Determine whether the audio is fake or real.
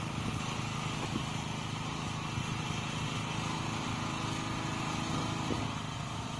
real